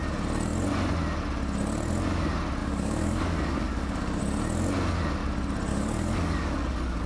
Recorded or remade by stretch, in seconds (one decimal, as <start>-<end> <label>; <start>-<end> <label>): 0.0-2.6 recorded; 2.6-4.2 remade; 4.2-5.7 recorded; 5.7-7.1 remade